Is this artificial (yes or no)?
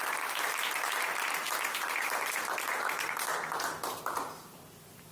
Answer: no